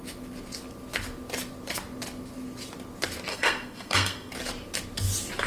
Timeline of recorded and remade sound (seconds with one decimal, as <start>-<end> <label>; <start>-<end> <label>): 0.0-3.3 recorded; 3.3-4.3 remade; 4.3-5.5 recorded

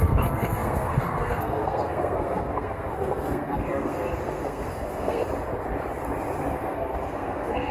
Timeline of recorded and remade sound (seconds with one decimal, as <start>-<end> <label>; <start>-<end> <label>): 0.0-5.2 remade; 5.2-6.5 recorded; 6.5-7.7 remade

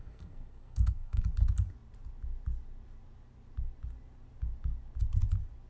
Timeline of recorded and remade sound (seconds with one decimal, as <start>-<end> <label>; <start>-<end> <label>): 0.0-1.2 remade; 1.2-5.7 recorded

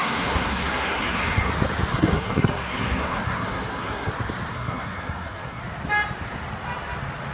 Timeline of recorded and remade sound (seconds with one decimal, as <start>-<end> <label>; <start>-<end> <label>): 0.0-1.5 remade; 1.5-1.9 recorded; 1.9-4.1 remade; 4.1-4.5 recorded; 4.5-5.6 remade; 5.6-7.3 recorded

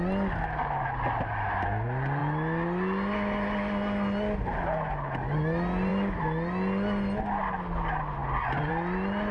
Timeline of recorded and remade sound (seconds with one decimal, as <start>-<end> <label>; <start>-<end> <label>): 0.0-9.3 recorded

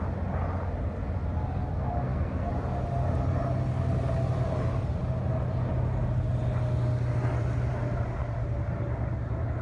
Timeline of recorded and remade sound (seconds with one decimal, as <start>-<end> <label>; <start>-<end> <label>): 0.0-1.7 recorded; 1.7-2.5 remade; 2.5-9.6 recorded

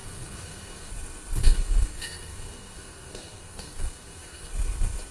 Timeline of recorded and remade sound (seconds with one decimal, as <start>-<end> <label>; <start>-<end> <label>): 0.0-0.9 remade; 0.9-1.4 recorded; 1.4-4.5 remade; 4.5-5.1 recorded

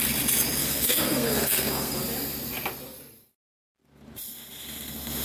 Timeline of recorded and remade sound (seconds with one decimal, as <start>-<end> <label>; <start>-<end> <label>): 0.0-0.6 recorded; 0.6-2.0 remade; 2.0-5.2 recorded